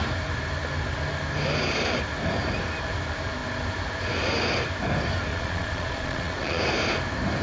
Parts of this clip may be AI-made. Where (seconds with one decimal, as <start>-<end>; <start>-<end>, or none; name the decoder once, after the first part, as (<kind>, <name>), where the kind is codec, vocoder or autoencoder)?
5.3-6.6 (vocoder, Vocos)